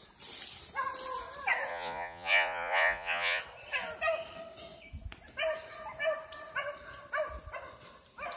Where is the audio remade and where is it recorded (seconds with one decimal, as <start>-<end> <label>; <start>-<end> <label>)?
0.0-1.7 recorded; 1.7-3.4 remade; 3.4-8.4 recorded